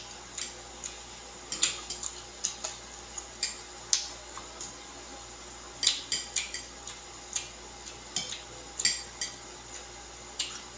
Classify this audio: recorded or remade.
recorded